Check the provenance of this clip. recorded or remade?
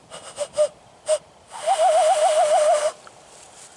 recorded